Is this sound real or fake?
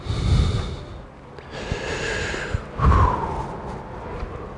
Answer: real